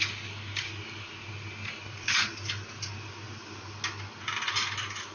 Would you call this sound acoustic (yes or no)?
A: yes